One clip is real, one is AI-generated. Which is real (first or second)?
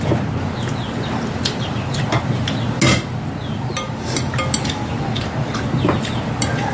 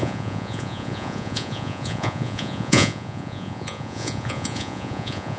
first